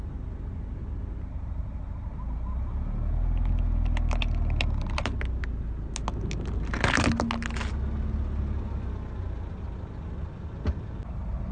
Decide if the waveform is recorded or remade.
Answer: recorded